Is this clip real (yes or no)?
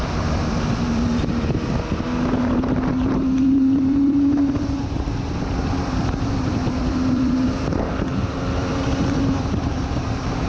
no